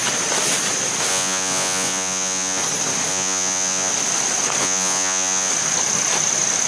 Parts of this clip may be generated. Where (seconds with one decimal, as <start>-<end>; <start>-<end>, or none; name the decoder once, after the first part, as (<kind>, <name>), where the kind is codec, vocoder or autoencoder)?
1.1-2.6 (vocoder, Vocos); 3.1-3.9; 4.6-5.5